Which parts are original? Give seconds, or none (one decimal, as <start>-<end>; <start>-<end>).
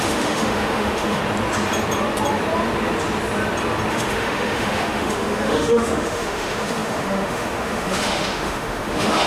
1.2-3.9